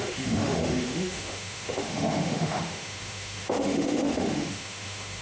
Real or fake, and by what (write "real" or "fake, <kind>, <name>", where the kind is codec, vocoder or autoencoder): fake, autoencoder, DAC-VAE